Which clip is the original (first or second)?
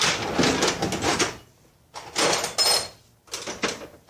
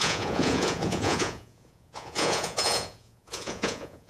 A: first